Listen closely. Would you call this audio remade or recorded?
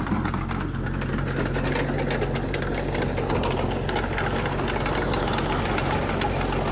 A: recorded